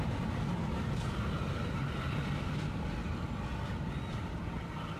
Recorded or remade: recorded